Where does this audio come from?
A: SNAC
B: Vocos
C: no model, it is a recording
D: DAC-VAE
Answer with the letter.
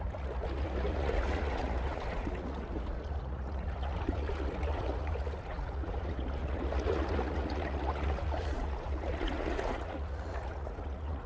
B